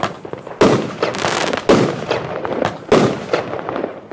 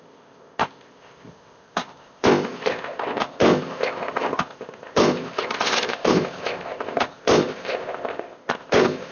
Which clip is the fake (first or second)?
second